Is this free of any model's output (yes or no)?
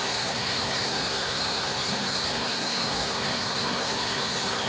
no